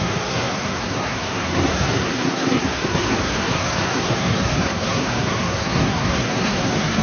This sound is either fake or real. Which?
fake